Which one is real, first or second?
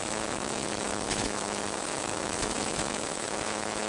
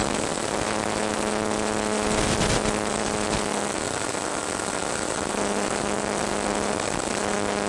second